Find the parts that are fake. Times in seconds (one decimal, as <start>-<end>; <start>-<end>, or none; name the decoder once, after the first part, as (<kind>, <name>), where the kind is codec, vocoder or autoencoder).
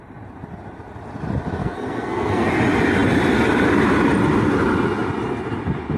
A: 1.6-2.5 (codec, SNAC)